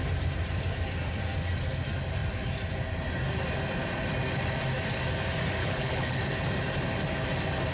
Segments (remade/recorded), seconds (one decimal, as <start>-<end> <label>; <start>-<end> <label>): 0.0-5.6 recorded; 5.6-6.2 remade; 6.2-7.7 recorded